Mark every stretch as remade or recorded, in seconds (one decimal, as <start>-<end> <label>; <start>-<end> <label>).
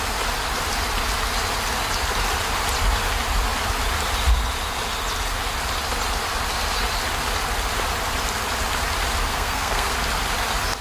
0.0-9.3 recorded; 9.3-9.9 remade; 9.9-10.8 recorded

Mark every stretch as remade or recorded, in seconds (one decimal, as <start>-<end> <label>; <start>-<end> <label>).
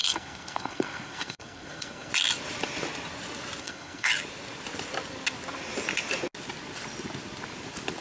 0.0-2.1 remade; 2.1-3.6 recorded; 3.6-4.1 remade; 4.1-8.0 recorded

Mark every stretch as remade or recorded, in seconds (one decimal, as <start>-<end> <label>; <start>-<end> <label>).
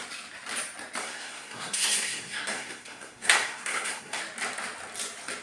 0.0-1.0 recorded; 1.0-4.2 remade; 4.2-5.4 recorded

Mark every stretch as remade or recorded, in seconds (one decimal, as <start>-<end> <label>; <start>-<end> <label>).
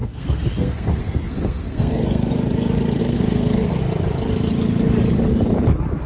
0.0-2.3 remade; 2.3-3.0 recorded; 3.0-3.8 remade; 3.8-6.1 recorded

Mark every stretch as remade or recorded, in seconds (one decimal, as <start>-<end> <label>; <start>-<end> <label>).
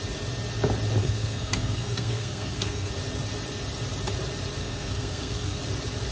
0.0-1.0 recorded; 1.0-2.9 remade; 2.9-4.6 recorded; 4.6-5.6 remade; 5.6-6.1 recorded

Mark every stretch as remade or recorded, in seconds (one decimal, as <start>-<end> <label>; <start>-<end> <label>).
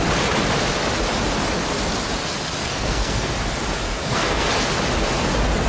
0.0-2.6 recorded; 2.6-3.3 remade; 3.3-4.0 recorded; 4.0-4.5 remade; 4.5-5.7 recorded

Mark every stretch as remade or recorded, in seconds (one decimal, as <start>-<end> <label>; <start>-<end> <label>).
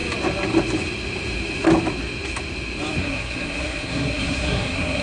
0.0-3.0 recorded; 3.0-5.0 remade